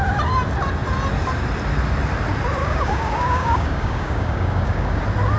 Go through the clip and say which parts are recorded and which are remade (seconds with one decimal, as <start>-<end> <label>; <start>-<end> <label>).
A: 0.0-2.6 recorded; 2.6-5.0 remade; 5.0-5.4 recorded